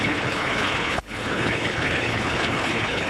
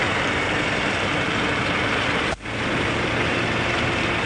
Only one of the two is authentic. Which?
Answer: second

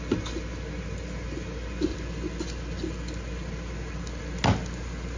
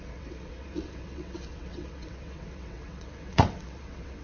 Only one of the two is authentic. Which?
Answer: first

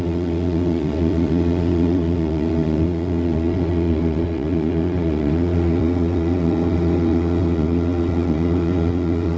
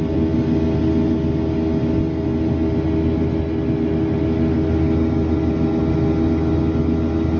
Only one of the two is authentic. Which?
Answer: second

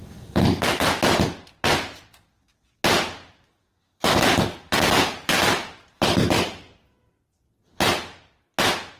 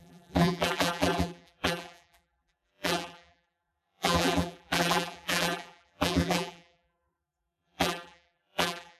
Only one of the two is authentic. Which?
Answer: first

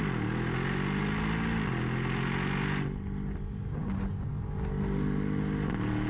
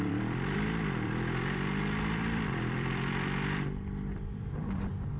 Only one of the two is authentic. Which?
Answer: first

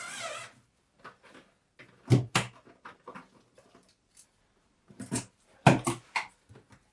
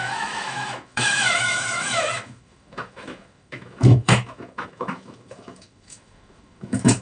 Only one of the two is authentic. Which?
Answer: first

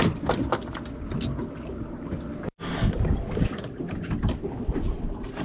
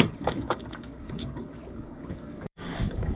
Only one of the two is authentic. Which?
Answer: first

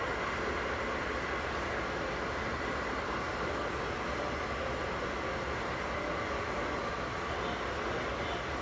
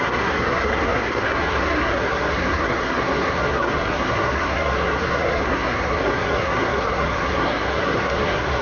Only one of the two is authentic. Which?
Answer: first